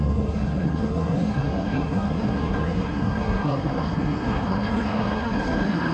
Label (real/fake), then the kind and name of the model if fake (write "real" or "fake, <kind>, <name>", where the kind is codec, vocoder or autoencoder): fake, codec, SNAC